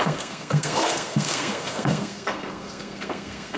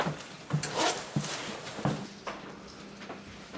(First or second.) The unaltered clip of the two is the second